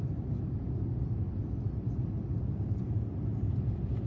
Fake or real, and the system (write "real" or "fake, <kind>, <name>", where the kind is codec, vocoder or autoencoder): real